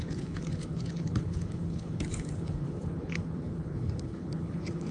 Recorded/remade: remade